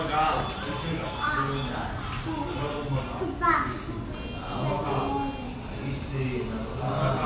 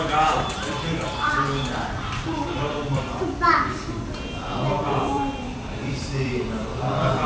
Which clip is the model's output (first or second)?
second